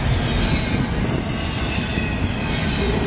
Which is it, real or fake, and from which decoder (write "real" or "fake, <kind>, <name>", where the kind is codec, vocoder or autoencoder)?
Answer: real